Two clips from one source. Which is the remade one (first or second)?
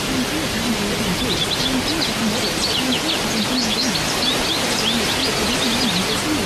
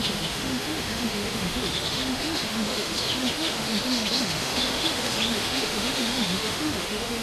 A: second